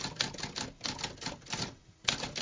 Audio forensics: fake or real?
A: real